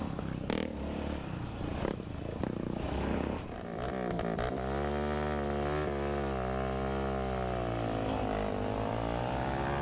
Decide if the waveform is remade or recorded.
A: recorded